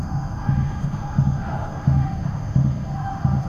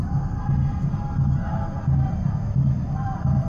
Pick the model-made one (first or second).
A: first